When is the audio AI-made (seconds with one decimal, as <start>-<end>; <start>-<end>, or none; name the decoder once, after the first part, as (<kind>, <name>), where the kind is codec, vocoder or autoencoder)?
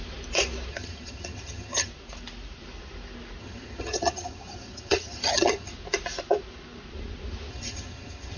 0.7-1.9 (vocoder, HiFi-GAN); 3.4-5.7; 7.5-8.4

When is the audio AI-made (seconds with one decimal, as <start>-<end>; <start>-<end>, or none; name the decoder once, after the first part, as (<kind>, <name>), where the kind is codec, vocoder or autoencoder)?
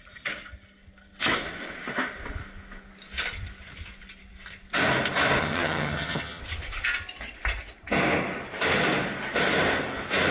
5.4-6.4 (vocoder, HiFi-GAN)